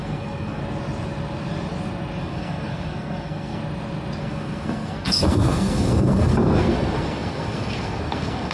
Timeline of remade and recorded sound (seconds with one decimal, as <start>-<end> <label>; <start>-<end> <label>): 0.0-0.6 remade; 0.6-2.2 recorded; 2.2-3.6 remade; 3.6-4.2 recorded; 4.2-8.5 remade